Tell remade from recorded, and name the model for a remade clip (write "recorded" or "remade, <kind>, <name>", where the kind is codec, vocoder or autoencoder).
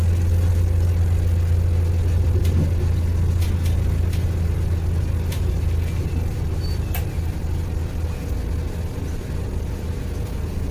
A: recorded